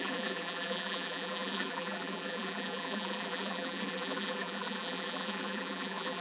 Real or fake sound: fake